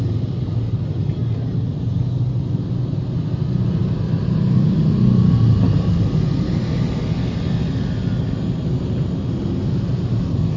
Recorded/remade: recorded